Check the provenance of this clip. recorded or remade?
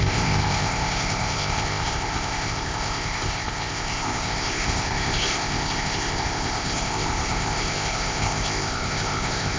remade